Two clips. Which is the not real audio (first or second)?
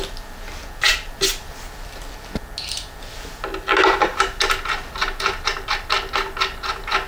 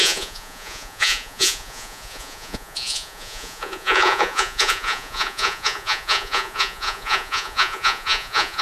second